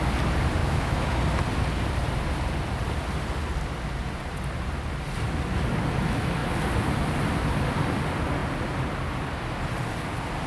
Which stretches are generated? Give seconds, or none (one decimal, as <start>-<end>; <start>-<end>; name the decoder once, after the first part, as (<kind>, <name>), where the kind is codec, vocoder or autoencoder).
0.6-1.2 (autoencoder, DAC-VAE)